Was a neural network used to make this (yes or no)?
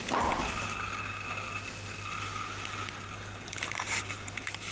no